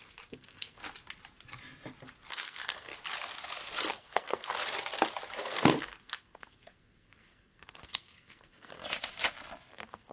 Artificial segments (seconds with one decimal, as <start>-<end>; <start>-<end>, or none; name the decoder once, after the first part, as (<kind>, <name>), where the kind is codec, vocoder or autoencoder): 0.0-0.8 (codec, SNAC); 2.3-2.9; 3.9-4.5; 5.4-8.8; 9.7-10.1